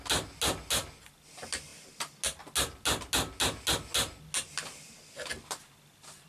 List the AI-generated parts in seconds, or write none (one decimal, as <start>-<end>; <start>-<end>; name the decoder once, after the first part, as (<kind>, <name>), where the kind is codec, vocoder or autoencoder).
none